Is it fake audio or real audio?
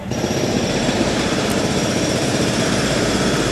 fake